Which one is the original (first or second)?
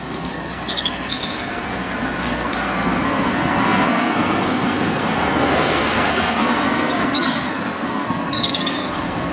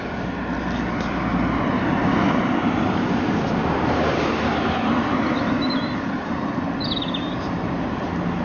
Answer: second